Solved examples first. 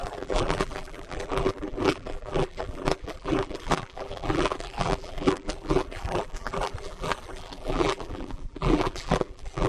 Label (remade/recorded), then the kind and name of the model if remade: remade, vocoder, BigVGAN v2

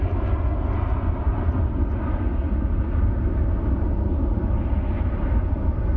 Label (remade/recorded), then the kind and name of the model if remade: recorded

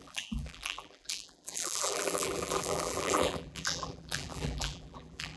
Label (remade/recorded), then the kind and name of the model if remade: remade, vocoder, BigVGAN v2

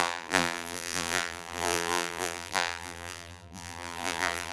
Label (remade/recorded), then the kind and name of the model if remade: remade, vocoder, BigVGAN v2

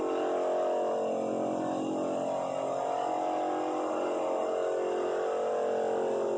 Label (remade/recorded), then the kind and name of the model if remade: recorded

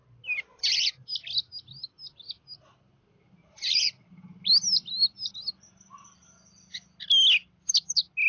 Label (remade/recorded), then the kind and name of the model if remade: recorded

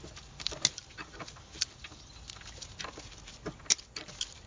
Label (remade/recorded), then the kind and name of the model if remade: recorded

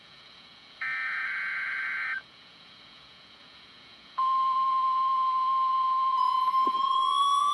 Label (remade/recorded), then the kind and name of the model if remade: remade, vocoder, Vocos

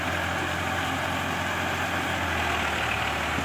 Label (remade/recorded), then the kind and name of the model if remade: recorded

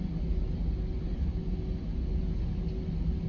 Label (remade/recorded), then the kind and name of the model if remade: recorded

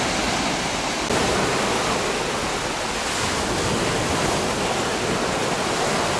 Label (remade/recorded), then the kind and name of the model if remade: recorded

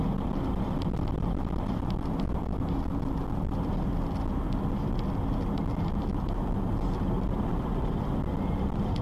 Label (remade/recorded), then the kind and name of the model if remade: recorded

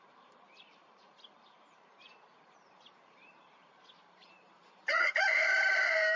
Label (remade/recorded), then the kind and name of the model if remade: remade, vocoder, BigVGAN v2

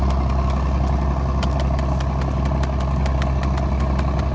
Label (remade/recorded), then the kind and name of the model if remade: recorded